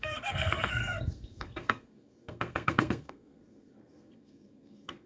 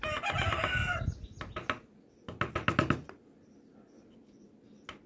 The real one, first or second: second